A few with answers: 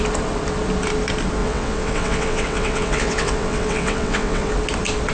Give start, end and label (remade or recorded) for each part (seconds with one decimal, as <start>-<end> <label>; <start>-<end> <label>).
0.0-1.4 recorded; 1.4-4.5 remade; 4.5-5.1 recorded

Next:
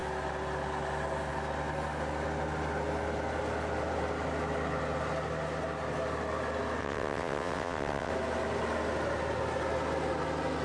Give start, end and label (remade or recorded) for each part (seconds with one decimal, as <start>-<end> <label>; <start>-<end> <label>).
0.0-6.8 recorded; 6.8-8.1 remade; 8.1-10.6 recorded

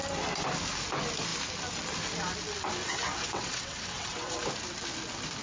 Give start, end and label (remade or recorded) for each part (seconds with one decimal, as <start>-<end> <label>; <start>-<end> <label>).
0.0-2.8 recorded; 2.8-4.5 remade; 4.5-5.4 recorded

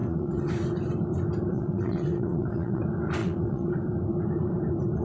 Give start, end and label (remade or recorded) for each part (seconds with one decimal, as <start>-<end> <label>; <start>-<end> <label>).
0.0-0.5 remade; 0.5-1.5 recorded; 1.5-2.8 remade; 2.8-3.2 recorded; 3.2-3.7 remade; 3.7-5.0 recorded

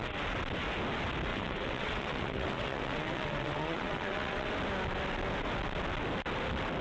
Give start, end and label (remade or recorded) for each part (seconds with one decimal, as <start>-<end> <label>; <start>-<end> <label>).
0.0-1.3 recorded; 1.3-4.5 remade; 4.5-6.8 recorded

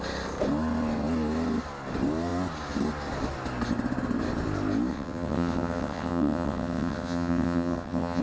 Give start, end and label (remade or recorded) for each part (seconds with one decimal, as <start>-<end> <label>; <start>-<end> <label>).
0.0-4.9 recorded; 4.9-8.2 remade

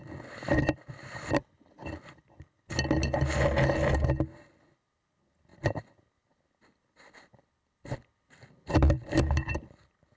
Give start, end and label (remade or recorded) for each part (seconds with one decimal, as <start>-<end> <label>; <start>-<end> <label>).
0.0-10.2 recorded